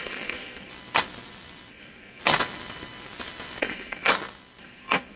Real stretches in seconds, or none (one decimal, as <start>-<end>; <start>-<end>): 0.7-1.7; 2.2-3.6; 4.1-4.6